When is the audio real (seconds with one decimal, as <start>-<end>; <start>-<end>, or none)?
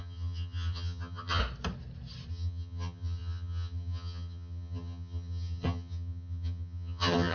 1.4-2.3